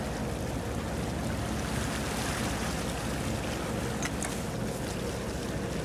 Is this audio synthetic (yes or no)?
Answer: no